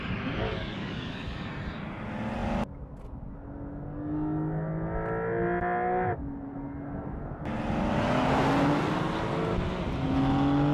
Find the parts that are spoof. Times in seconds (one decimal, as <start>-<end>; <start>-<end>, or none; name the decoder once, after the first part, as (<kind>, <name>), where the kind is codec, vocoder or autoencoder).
0.5-1.5 (codec, DAC)